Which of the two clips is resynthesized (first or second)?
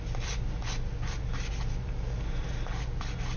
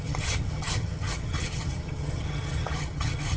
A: second